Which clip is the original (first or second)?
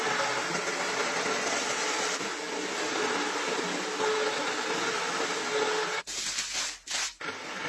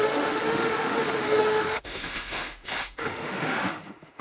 first